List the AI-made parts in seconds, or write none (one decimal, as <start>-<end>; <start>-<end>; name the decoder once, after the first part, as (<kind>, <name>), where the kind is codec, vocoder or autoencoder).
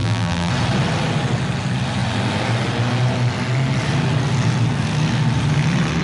0.0-0.5 (vocoder, BigVGAN v2)